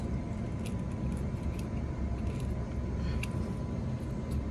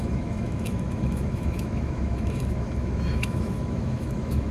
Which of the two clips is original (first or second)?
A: first